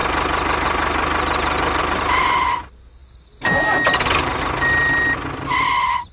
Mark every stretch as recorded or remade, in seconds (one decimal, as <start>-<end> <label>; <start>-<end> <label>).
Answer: 0.0-6.1 recorded